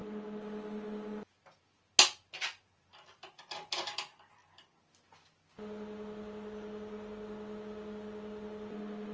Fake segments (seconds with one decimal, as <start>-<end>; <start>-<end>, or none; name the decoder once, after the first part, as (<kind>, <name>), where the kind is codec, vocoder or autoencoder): none